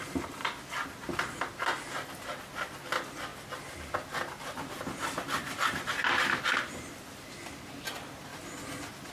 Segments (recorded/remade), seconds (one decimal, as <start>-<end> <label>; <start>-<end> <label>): 0.0-9.1 recorded